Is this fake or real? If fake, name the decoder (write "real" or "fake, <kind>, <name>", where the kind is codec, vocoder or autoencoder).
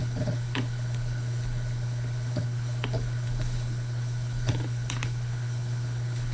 fake, codec, HILCodec